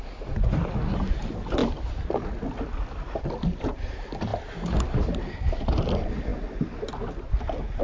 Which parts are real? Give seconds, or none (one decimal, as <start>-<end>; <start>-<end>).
0.0-7.8